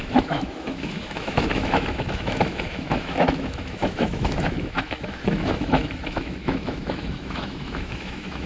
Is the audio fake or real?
fake